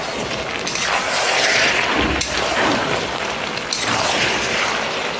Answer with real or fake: real